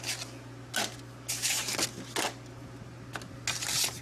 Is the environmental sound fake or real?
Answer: real